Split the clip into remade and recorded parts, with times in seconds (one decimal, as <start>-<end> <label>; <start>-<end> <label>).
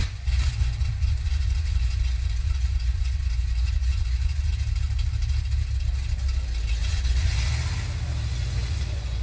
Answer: 0.0-4.5 remade; 4.5-6.8 recorded; 6.8-7.5 remade; 7.5-8.3 recorded; 8.3-9.2 remade